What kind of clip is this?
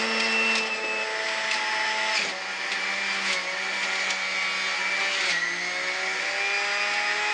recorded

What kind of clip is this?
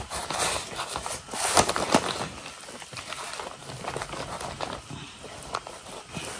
recorded